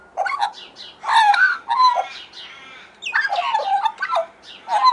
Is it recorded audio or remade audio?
recorded